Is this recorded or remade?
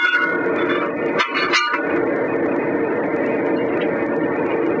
recorded